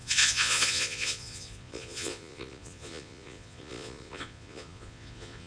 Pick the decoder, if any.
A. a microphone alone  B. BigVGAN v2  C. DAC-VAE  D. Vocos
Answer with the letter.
D